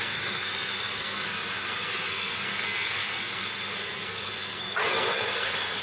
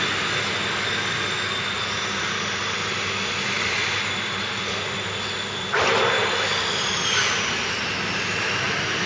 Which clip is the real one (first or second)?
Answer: second